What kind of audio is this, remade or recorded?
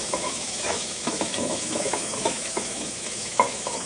remade